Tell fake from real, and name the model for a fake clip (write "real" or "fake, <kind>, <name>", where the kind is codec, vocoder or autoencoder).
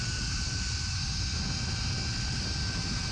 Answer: real